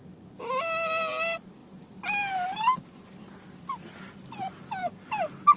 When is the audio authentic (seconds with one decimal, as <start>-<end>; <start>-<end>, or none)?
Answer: 0.0-5.6